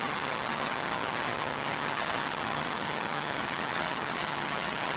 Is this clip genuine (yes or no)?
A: no